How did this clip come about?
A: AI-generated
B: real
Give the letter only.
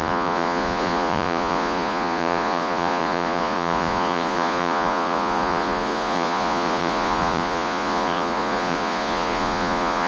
A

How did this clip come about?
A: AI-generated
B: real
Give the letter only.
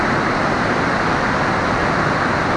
B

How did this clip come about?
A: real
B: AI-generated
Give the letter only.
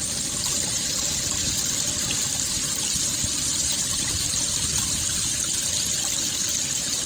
A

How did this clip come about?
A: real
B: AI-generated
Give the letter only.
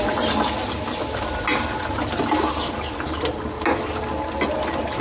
A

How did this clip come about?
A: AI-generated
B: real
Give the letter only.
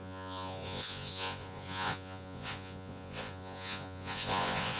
A